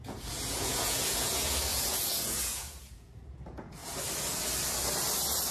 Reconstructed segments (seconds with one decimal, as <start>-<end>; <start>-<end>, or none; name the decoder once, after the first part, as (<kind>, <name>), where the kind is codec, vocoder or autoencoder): 0.0-3.8 (vocoder, Vocos)